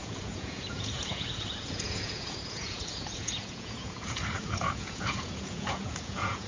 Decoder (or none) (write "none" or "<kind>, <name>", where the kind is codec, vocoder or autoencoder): vocoder, Vocos